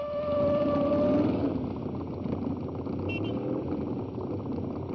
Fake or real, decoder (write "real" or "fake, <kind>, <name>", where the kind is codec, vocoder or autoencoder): real